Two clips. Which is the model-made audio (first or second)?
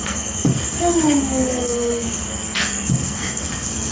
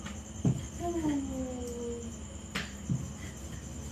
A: first